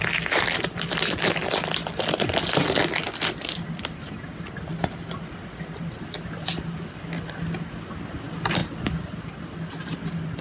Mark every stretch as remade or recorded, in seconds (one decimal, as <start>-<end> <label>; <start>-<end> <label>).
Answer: 0.0-10.4 recorded